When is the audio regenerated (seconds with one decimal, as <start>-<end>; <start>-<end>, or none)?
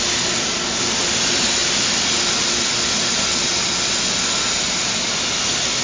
none